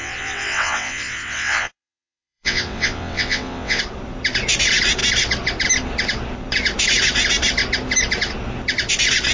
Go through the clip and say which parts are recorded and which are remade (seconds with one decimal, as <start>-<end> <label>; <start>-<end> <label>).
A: 0.0-3.8 remade; 3.8-9.3 recorded